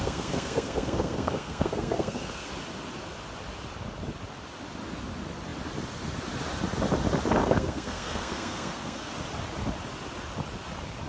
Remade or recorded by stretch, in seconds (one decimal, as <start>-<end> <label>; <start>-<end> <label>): 0.0-2.5 remade; 2.5-7.4 recorded; 7.4-9.1 remade; 9.1-11.1 recorded